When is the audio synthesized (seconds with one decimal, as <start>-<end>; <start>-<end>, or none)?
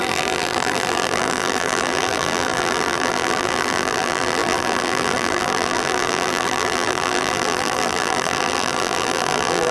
0.0-9.7